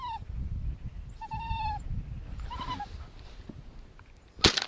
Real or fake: real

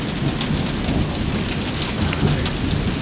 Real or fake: real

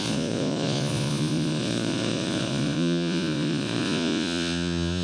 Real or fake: fake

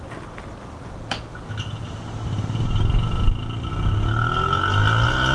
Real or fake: real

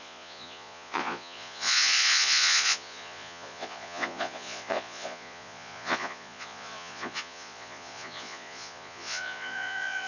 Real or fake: fake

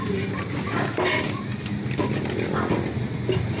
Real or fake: real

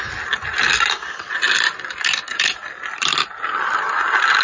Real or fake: real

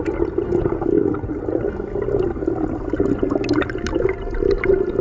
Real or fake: real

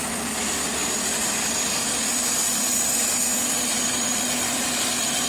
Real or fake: real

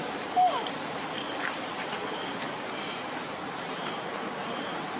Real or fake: real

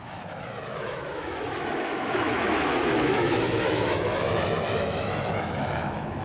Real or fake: fake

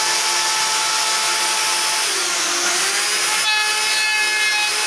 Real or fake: real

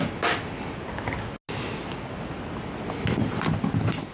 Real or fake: real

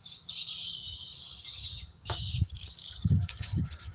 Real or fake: fake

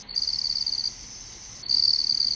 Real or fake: real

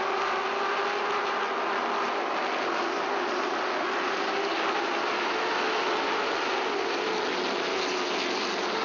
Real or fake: real